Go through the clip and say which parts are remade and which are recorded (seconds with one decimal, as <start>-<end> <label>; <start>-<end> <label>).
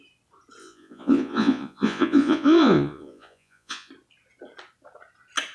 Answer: 0.0-0.6 recorded; 0.6-3.9 remade; 3.9-5.5 recorded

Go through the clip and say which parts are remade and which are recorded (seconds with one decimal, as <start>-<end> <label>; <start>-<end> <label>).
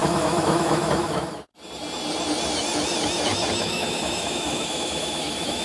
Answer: 0.0-1.5 remade; 1.5-3.6 recorded; 3.6-5.6 remade